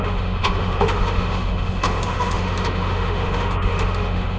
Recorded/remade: remade